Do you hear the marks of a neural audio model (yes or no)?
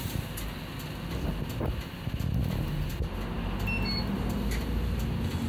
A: no